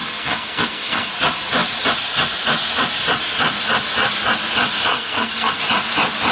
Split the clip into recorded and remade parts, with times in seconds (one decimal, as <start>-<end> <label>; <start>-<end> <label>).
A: 0.0-1.1 remade; 1.1-4.9 recorded; 4.9-5.6 remade; 5.6-6.3 recorded